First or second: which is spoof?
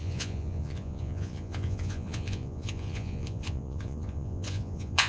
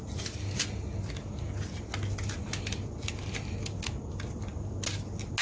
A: first